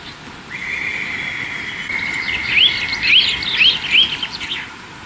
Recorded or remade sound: recorded